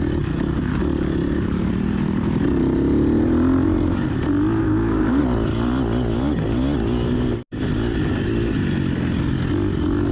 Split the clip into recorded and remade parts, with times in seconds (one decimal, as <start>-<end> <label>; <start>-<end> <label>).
0.0-4.6 recorded; 4.6-5.2 remade; 5.2-10.1 recorded